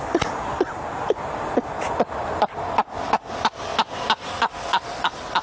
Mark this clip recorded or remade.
recorded